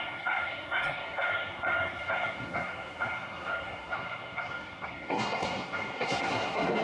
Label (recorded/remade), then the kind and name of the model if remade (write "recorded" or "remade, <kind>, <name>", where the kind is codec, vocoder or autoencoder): remade, codec, SNAC